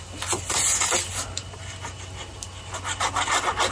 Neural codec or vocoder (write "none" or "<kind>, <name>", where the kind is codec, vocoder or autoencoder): none